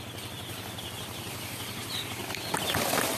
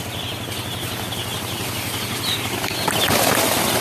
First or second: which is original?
second